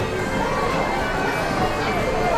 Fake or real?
real